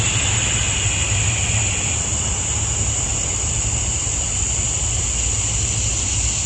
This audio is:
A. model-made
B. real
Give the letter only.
B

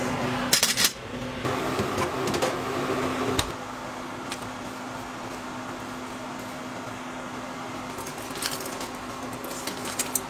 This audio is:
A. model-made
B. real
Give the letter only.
B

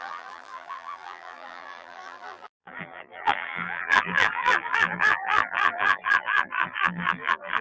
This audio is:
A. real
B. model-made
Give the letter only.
B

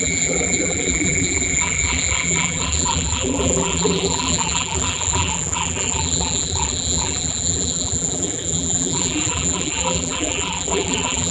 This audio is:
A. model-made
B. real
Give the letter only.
A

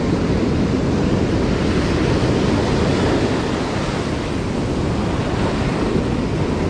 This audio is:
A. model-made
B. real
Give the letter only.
B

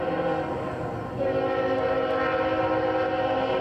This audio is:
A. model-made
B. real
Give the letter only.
B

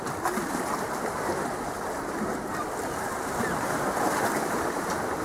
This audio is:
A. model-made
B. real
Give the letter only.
A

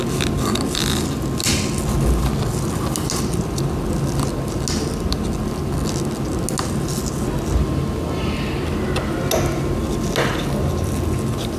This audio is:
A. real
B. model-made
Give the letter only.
A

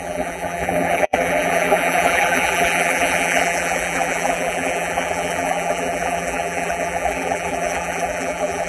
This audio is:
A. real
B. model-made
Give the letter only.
B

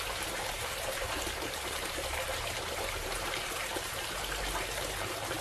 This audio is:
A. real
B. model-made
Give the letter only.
B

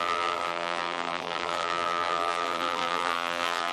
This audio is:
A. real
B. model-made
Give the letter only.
B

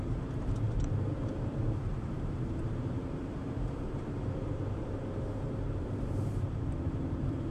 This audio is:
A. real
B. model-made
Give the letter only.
B